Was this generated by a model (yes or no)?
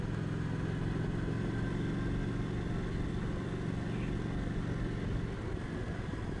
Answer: no